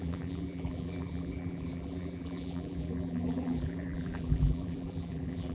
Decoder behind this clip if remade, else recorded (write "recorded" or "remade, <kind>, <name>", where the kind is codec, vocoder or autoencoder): remade, vocoder, BigVGAN v2